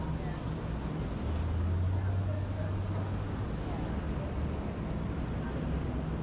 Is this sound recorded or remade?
recorded